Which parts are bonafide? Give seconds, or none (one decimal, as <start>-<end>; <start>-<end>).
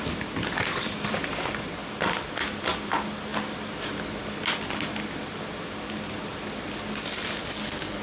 0.0-7.4